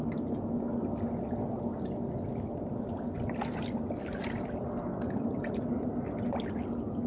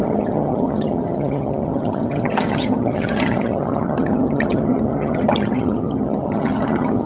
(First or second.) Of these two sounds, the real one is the first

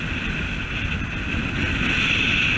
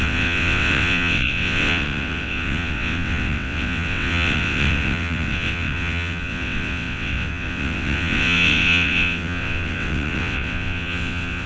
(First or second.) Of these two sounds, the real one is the first